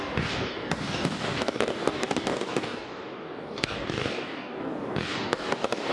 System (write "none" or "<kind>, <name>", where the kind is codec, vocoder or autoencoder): codec, DAC